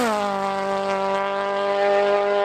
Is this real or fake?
real